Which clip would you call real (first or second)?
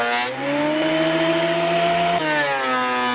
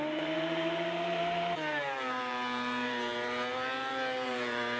first